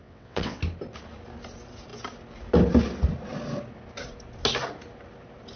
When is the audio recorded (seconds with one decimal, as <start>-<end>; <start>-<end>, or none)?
0.6-5.6